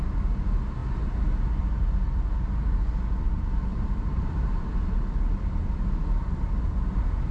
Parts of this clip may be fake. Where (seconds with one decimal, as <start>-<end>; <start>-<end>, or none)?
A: 3.7-4.6